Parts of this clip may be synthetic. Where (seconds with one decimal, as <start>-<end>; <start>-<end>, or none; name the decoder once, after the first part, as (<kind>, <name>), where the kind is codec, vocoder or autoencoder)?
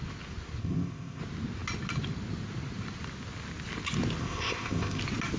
0.6-1.2 (codec, ZipCodec); 4.2-5.0